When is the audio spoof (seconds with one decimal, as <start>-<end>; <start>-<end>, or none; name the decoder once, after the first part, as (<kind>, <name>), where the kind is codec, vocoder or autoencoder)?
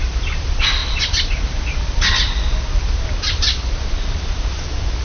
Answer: 0.0-5.0 (vocoder, BigVGAN v2)